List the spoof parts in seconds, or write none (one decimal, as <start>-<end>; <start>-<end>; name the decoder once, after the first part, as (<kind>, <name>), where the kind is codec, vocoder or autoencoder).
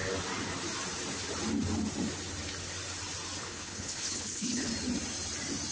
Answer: 3.4-4.7 (codec, HILCodec)